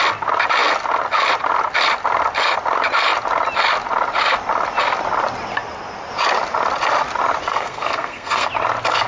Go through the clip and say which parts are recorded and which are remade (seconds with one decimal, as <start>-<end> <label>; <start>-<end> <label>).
0.0-7.5 recorded; 7.5-8.5 remade; 8.5-9.1 recorded